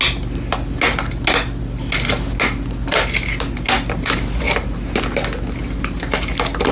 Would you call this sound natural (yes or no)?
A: yes